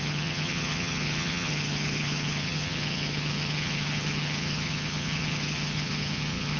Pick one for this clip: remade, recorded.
remade